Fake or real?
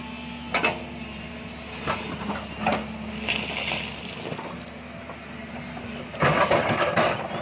real